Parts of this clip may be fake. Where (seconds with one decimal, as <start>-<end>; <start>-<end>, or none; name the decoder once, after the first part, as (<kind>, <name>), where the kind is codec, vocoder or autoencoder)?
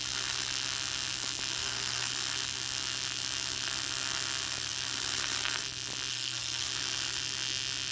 1.6-2.1 (codec, SNAC); 6.1-6.7